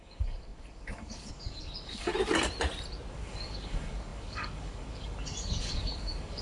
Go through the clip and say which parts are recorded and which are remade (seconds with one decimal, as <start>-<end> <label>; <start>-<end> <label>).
0.0-2.1 remade; 2.1-3.1 recorded; 3.1-6.4 remade

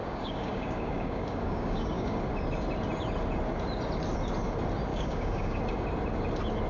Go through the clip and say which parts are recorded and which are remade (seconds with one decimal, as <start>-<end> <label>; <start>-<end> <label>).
0.0-2.2 remade; 2.2-4.9 recorded; 4.9-5.6 remade; 5.6-6.7 recorded

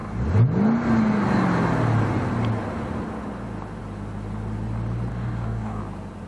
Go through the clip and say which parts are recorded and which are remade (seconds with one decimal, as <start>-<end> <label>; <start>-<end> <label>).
0.0-5.1 recorded; 5.1-5.8 remade; 5.8-6.3 recorded

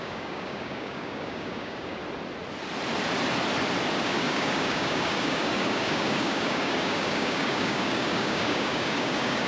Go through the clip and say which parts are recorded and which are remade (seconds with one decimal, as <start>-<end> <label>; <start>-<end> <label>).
0.0-2.0 remade; 2.0-3.9 recorded; 3.9-9.5 remade

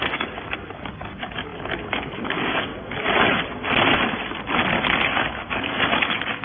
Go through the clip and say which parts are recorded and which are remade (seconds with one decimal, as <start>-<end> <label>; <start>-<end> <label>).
0.0-2.7 remade; 2.7-5.5 recorded; 5.5-6.4 remade